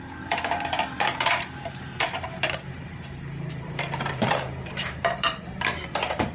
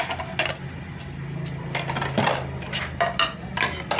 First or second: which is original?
second